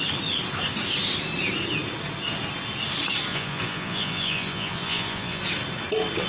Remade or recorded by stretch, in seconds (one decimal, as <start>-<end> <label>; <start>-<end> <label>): 0.0-3.3 recorded; 3.3-5.4 remade; 5.4-6.3 recorded